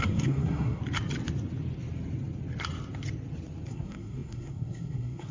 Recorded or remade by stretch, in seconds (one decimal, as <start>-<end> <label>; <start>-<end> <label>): 0.0-0.8 remade; 0.8-3.7 recorded; 3.7-5.3 remade